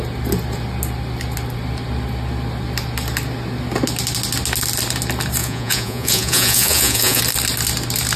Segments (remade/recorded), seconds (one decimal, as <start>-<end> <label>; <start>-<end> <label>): 0.0-5.4 recorded; 5.4-7.2 remade; 7.2-8.2 recorded